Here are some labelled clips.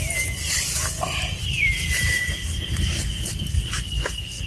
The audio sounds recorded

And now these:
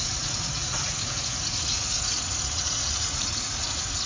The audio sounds remade